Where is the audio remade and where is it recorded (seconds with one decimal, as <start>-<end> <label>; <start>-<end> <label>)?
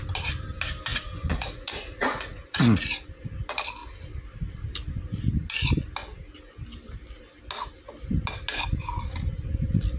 0.0-0.9 recorded; 0.9-2.8 remade; 2.8-10.0 recorded